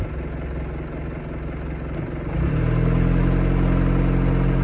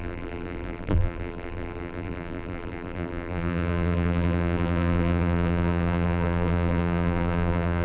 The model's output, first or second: second